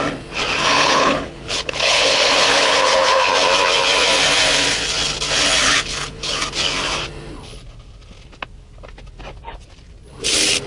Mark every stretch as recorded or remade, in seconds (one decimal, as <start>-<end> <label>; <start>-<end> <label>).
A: 0.0-0.7 recorded; 0.7-3.3 remade; 3.3-5.6 recorded; 5.6-6.4 remade; 6.4-10.7 recorded